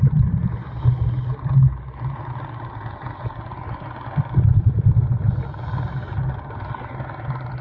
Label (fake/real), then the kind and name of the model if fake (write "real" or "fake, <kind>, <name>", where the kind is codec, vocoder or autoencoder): real